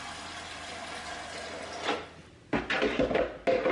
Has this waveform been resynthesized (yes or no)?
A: no